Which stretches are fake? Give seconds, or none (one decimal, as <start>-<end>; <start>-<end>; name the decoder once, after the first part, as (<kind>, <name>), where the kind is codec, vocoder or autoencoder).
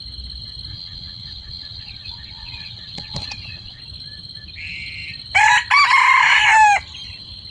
0.7-3.8 (vocoder, WaveNeXt)